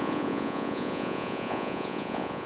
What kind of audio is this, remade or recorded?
remade